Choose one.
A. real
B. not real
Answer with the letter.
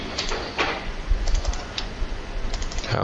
B